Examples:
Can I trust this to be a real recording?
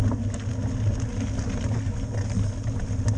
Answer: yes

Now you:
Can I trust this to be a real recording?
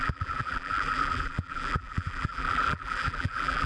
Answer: no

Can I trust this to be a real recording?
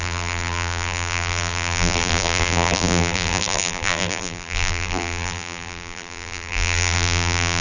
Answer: no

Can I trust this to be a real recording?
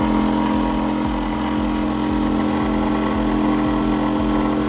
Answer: yes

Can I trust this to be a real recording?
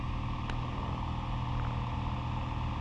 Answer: yes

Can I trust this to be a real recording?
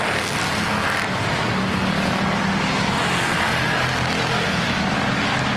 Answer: yes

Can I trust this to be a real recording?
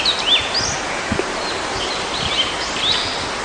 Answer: yes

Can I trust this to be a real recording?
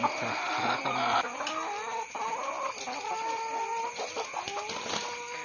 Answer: yes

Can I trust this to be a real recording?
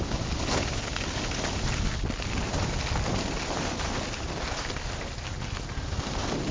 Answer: yes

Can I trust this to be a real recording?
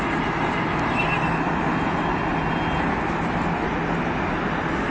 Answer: yes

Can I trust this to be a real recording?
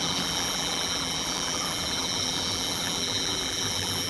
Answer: no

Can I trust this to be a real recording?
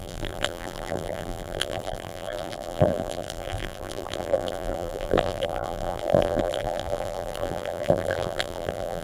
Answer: no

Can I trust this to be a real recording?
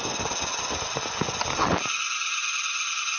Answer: yes